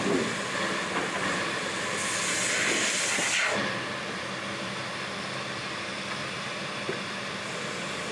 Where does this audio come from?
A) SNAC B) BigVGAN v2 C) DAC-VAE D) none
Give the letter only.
D